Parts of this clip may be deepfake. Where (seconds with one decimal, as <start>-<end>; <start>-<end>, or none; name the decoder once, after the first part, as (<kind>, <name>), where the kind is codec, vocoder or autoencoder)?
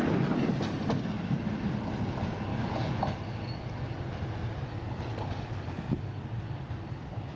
2.5-3.0 (vocoder, Vocos)